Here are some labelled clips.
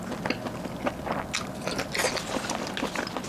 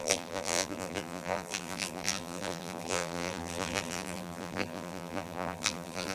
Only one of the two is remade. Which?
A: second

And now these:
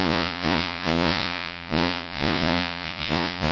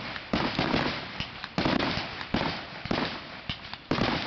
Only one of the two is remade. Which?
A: first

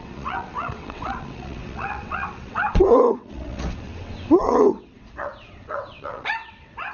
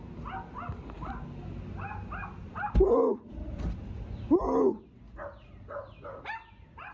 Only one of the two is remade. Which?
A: first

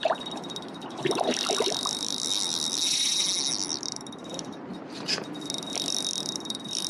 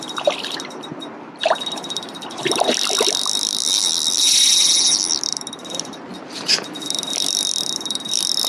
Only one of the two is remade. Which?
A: second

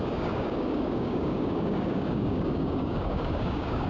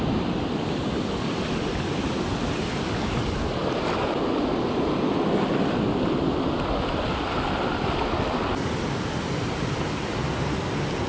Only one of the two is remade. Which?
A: first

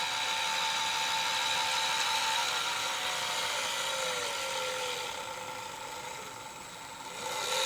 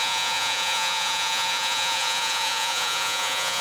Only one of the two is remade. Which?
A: second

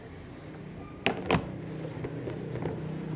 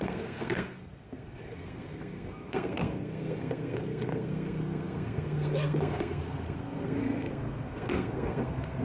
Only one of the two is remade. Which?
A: second